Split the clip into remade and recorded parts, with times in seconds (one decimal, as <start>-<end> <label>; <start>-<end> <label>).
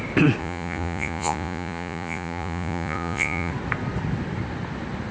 0.0-0.4 recorded; 0.4-3.5 remade; 3.5-5.1 recorded